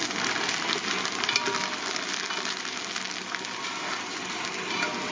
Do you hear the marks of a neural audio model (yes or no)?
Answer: no